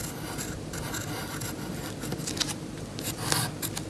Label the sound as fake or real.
real